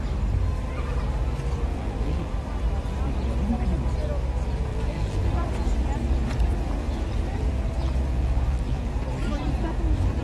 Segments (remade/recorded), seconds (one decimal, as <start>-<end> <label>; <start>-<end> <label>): 0.0-1.7 recorded; 1.7-2.3 remade; 2.3-4.7 recorded; 4.7-5.3 remade; 5.3-8.1 recorded; 8.1-8.9 remade; 8.9-10.2 recorded